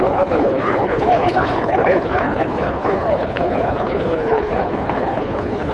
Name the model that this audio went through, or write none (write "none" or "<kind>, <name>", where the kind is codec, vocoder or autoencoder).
codec, HILCodec